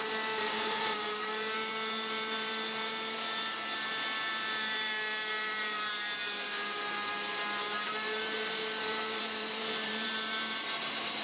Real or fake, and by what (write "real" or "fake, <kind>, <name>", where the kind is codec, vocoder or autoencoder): fake, vocoder, BigVGAN v2